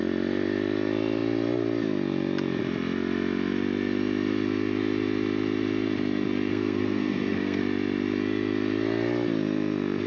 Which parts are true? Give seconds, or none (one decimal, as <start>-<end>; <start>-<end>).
0.0-6.5; 7.6-10.1